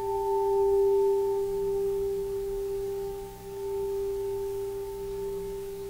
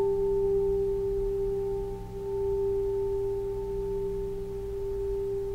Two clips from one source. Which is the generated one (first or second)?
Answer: first